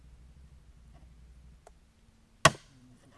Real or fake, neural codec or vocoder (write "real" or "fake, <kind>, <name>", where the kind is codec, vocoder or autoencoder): real